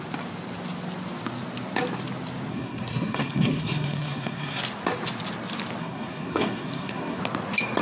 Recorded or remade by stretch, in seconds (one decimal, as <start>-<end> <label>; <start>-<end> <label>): 0.0-2.5 recorded; 2.5-4.6 remade; 4.6-5.8 recorded; 5.8-7.2 remade; 7.2-7.8 recorded